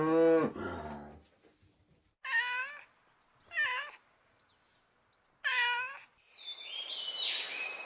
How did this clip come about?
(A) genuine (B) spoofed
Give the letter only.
A